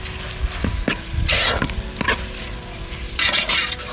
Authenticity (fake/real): real